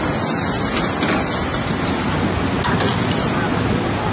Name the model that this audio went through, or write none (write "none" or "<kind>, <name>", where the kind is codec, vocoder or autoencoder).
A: none